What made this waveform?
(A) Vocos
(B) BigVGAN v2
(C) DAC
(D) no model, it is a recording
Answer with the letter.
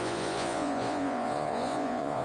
A